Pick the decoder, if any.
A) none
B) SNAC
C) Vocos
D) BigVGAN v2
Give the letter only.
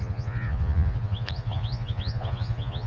C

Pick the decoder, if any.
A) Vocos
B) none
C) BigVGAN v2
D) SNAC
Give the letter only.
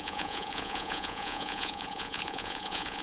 A